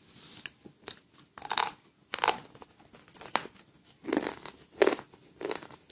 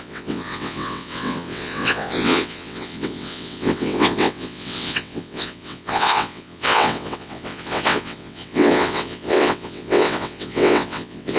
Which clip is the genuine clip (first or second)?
first